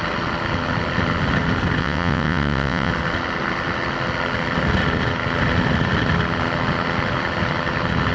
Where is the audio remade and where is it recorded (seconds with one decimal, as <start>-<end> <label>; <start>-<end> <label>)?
0.0-1.8 recorded; 1.8-2.9 remade; 2.9-8.1 recorded